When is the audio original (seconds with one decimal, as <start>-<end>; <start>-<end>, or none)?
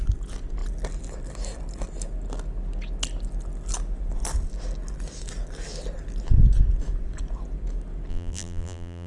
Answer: 0.0-8.1